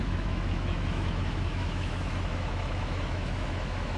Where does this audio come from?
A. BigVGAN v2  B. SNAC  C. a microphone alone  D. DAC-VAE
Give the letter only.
D